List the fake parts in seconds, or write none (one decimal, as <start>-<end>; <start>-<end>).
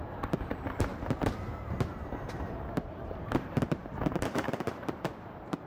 0.0-5.7